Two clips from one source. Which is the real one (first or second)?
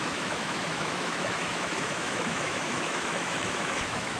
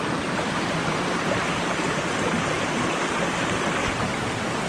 second